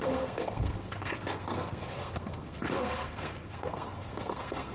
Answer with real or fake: fake